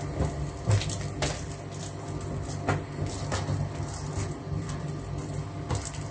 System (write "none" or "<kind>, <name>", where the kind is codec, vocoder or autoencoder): none